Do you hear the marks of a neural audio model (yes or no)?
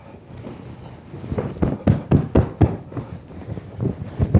no